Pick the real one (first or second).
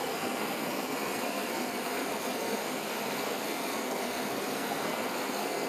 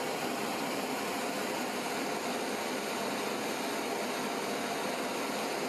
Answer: second